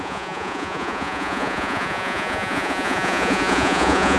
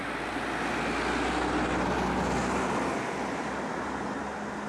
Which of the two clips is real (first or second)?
second